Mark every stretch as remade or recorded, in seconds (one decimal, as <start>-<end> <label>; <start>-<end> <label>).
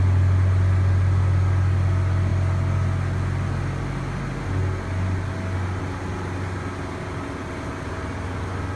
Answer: 0.0-8.8 recorded